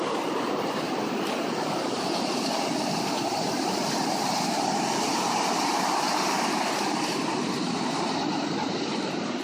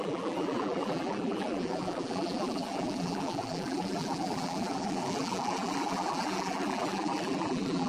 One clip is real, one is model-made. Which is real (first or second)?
first